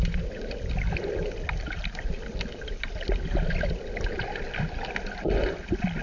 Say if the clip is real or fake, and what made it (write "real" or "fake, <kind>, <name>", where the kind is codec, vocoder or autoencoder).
real